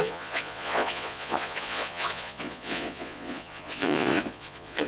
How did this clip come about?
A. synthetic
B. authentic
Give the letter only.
A